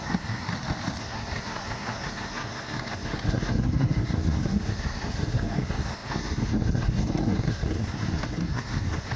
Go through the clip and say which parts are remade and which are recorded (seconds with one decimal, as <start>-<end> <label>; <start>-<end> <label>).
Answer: 0.0-0.5 remade; 0.5-1.0 recorded; 1.0-9.2 remade

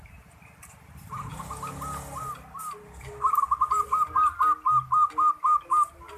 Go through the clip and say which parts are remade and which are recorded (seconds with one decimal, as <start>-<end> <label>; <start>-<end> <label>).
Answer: 0.0-6.2 recorded

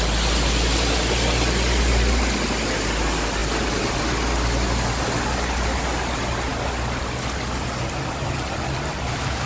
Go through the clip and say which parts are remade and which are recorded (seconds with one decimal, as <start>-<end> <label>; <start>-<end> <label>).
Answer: 0.0-9.5 recorded

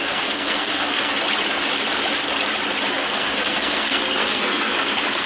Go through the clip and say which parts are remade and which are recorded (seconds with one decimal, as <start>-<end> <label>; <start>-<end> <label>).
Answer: 0.0-1.1 remade; 1.1-2.9 recorded; 2.9-5.3 remade

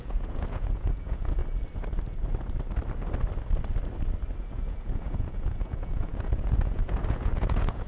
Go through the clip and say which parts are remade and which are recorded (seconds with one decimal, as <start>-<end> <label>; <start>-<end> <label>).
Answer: 0.0-1.4 remade; 1.4-4.4 recorded; 4.4-7.9 remade

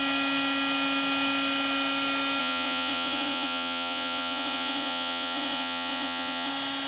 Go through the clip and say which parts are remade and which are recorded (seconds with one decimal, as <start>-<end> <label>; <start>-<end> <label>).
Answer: 0.0-2.4 recorded; 2.4-6.5 remade; 6.5-6.9 recorded